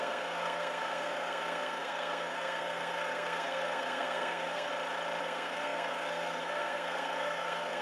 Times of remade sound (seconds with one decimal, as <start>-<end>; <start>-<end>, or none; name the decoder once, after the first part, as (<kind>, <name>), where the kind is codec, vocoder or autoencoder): 0.0-4.7 (codec, SNAC); 5.2-7.8